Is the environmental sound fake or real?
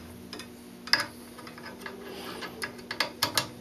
real